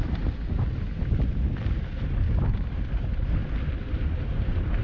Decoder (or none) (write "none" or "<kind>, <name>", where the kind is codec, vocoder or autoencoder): none